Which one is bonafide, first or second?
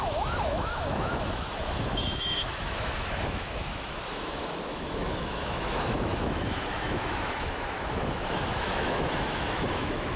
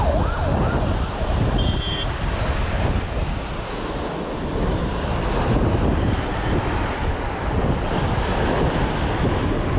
second